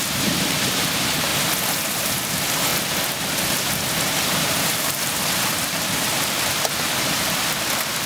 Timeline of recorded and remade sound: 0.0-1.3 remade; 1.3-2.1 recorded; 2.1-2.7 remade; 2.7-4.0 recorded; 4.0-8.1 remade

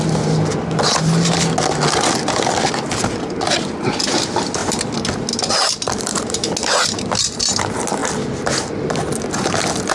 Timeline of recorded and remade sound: 0.0-9.9 recorded

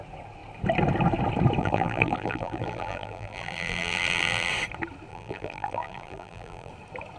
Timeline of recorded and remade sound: 0.0-1.6 recorded; 1.6-4.5 remade; 4.5-5.1 recorded; 5.1-6.7 remade; 6.7-7.2 recorded

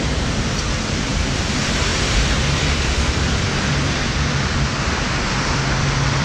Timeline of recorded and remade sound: 0.0-6.2 remade

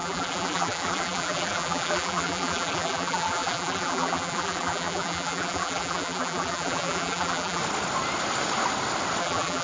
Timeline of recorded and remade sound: 0.0-7.6 remade; 7.6-9.2 recorded; 9.2-9.6 remade

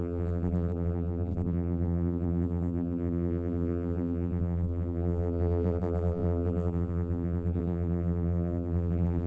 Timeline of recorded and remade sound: 0.0-9.3 remade